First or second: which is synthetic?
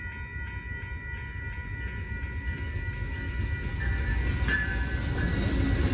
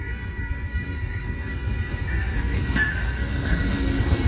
second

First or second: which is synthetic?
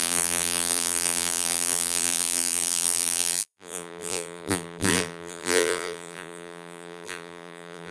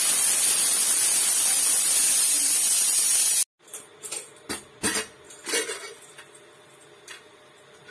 first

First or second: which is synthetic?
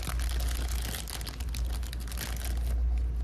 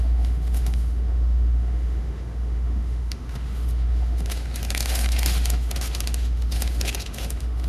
second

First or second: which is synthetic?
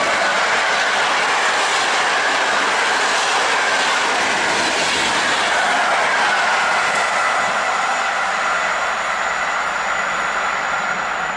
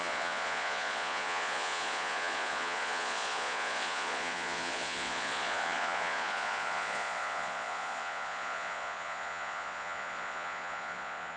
second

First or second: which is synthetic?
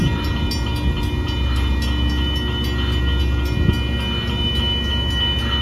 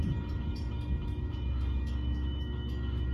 second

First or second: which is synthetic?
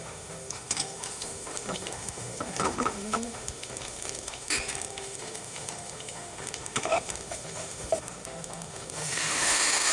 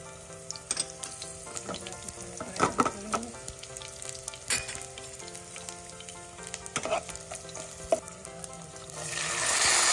first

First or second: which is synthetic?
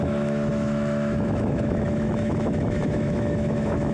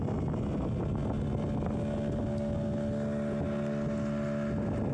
first